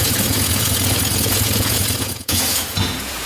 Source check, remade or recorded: remade